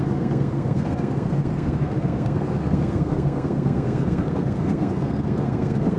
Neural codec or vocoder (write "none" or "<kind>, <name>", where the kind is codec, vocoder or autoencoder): codec, SNAC